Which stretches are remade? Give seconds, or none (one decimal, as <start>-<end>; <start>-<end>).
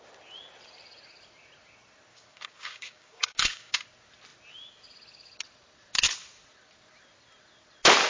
2.1-3.8